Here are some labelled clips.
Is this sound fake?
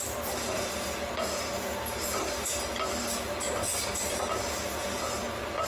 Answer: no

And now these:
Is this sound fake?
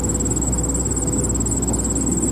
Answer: no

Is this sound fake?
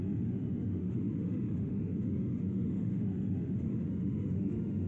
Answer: yes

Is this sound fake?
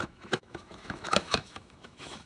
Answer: yes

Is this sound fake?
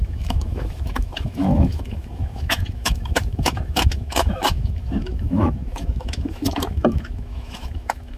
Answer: yes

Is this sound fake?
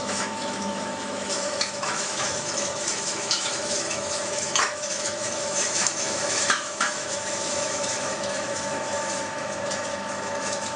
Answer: yes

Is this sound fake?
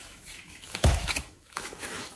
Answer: yes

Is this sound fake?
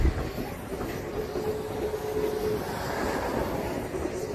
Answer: no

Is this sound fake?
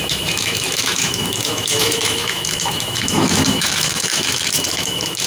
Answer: yes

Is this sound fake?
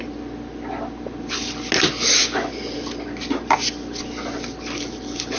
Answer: no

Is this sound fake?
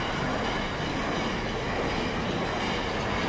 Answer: no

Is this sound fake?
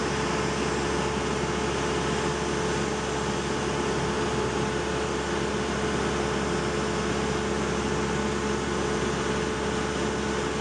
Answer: no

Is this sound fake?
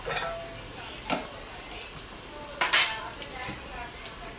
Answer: no